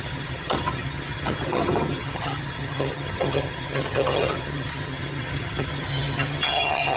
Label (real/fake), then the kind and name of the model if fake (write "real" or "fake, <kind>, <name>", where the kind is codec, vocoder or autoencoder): fake, vocoder, HiFi-GAN